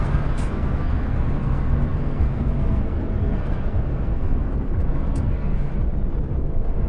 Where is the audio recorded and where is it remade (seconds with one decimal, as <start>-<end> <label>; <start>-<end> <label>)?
0.0-5.7 remade; 5.7-6.4 recorded; 6.4-6.9 remade